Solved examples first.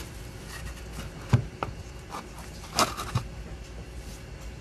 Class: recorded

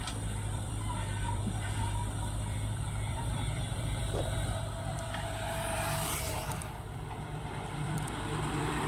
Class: remade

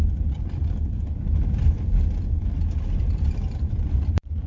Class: remade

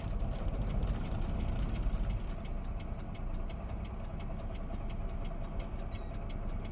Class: recorded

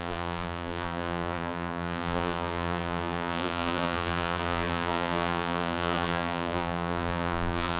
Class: remade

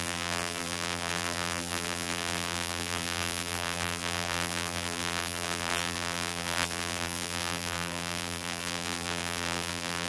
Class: remade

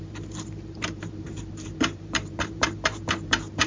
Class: remade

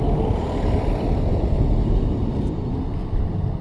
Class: recorded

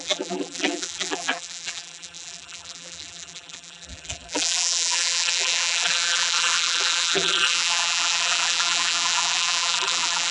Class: remade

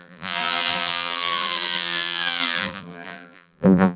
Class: remade